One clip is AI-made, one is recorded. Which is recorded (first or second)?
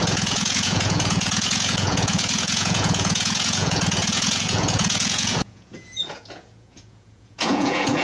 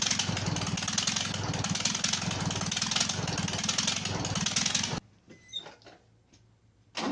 second